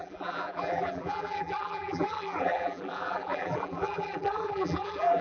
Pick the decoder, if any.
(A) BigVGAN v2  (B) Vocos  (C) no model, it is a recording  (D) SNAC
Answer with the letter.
A